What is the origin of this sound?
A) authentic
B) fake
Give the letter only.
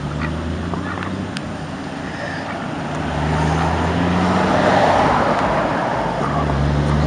A